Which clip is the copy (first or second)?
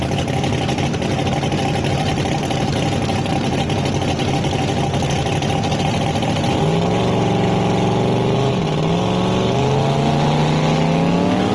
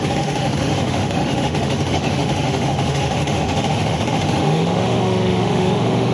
second